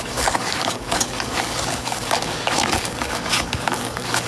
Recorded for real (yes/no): no